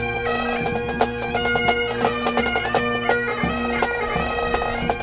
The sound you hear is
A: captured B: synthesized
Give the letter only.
A